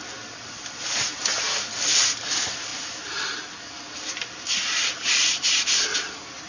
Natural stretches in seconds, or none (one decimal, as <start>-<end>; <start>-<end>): 0.0-6.5